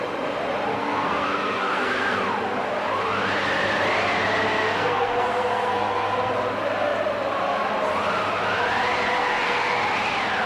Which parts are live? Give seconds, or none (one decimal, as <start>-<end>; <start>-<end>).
0.0-0.7; 2.2-4.5; 6.3-9.2; 9.8-10.5